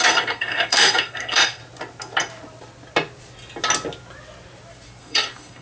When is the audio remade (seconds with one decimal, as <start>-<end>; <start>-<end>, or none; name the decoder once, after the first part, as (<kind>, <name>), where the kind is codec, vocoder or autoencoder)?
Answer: 0.0-1.6 (codec, SNAC); 5.0-5.6